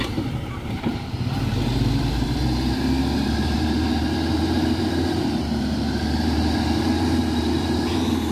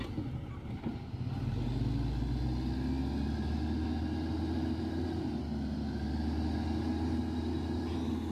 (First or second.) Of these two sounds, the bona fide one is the second